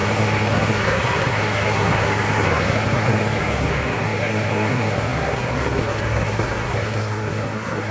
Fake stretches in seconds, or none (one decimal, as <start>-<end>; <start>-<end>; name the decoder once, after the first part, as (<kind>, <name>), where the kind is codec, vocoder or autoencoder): 0.0-7.9 (codec, SNAC)